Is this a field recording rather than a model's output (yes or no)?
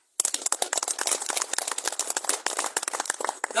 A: yes